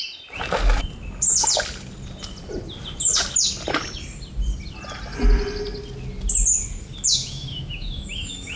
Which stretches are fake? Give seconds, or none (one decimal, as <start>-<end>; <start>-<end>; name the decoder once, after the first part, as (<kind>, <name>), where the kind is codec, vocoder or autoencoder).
7.2-8.6 (autoencoder, DAC-VAE)